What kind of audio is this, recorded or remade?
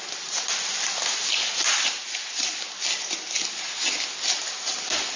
recorded